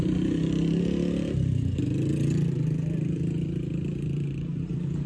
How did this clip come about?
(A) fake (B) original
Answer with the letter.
A